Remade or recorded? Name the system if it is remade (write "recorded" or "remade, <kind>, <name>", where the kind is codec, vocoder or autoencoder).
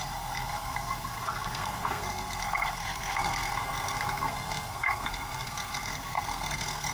remade, codec, SNAC